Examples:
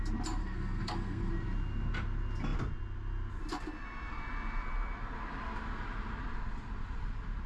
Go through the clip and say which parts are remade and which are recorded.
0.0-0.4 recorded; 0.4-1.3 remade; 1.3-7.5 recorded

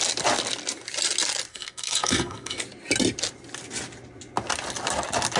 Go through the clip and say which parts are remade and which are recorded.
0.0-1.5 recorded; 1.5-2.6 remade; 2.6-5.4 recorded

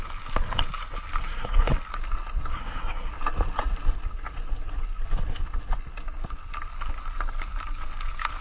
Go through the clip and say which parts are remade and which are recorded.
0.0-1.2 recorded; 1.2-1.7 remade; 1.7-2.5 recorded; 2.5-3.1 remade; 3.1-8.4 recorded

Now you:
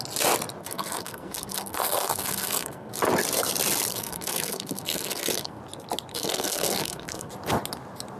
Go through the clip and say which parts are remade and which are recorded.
0.0-0.6 recorded; 0.6-3.0 remade; 3.0-3.9 recorded; 3.9-5.6 remade; 5.6-6.1 recorded; 6.1-7.3 remade; 7.3-8.2 recorded

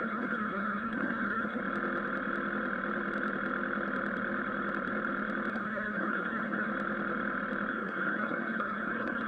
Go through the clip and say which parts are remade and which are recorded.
0.0-1.6 remade; 1.6-5.5 recorded; 5.5-6.7 remade; 6.7-7.7 recorded; 7.7-9.3 remade